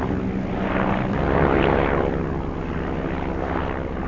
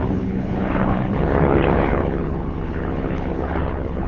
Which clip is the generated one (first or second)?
second